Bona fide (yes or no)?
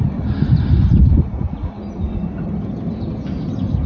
yes